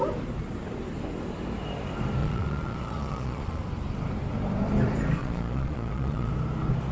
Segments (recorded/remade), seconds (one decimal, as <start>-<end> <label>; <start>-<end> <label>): 0.0-2.2 recorded; 2.2-3.6 remade; 3.6-5.2 recorded; 5.2-6.3 remade; 6.3-6.9 recorded